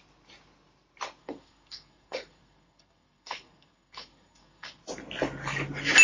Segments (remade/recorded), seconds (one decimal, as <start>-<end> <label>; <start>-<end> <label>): 0.0-1.2 recorded; 1.2-4.8 remade; 4.8-6.0 recorded